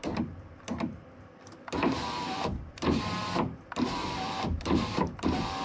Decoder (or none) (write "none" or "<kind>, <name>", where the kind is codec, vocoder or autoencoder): vocoder, BigVGAN v2